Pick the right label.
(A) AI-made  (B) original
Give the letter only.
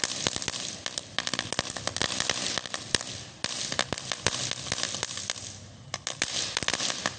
B